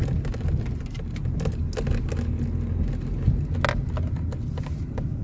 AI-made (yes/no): no